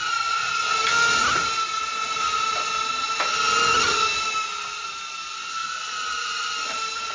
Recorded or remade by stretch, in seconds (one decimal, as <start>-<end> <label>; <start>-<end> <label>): 0.0-0.9 remade; 0.9-5.1 recorded; 5.1-7.1 remade